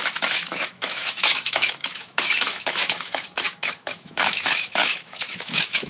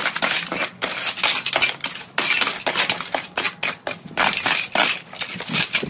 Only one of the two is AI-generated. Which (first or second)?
first